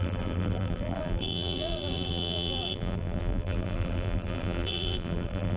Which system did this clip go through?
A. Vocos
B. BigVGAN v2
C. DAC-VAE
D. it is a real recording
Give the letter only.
B